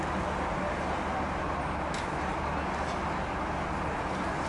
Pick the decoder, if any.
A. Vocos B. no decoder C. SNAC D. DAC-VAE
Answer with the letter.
B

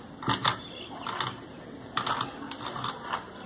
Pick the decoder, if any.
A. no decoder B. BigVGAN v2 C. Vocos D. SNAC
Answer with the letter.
A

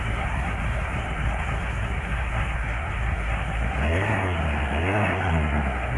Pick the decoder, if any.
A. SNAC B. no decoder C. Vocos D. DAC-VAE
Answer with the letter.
A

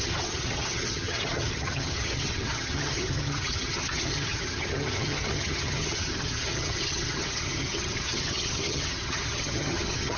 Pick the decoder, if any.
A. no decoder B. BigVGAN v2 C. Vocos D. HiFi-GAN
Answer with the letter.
D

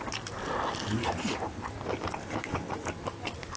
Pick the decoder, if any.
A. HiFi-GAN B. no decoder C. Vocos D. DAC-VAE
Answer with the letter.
B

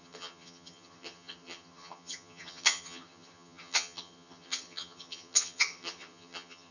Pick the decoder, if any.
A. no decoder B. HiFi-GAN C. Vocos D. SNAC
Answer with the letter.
B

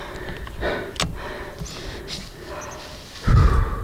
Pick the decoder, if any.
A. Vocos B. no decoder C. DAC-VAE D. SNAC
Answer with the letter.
B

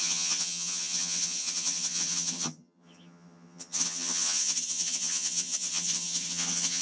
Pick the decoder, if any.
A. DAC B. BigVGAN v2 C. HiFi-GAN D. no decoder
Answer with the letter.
C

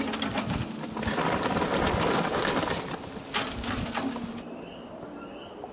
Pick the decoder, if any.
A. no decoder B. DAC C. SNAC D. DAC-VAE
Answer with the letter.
A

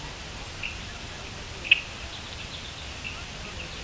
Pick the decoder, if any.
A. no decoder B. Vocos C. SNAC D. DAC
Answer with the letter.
A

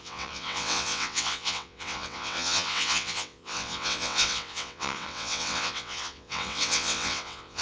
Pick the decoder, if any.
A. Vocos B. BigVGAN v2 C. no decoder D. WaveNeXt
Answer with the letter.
D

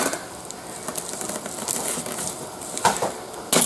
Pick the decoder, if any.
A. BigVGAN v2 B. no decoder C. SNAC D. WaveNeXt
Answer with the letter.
B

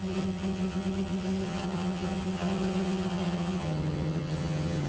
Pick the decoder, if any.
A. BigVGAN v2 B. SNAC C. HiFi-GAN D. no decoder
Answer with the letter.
C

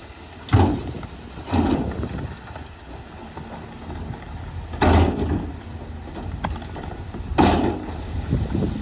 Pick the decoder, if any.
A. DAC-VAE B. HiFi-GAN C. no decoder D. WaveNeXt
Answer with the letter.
C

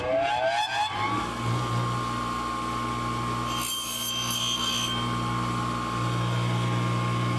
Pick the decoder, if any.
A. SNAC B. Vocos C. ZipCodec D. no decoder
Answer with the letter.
D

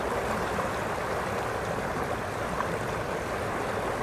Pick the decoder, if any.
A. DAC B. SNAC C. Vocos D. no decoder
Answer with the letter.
D